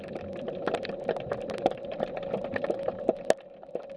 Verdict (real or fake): real